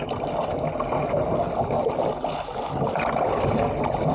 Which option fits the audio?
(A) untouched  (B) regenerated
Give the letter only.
A